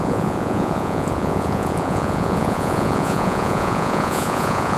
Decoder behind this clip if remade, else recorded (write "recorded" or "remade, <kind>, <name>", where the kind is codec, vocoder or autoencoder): remade, vocoder, Vocos